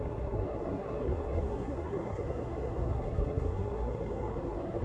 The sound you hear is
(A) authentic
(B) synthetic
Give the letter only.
B